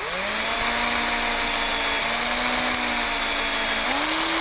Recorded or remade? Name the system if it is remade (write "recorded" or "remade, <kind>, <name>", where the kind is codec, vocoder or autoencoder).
recorded